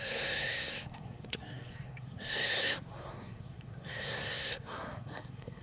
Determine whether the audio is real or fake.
fake